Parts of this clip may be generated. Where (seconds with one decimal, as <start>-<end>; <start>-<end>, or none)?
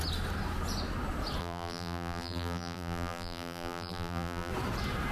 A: 1.4-4.5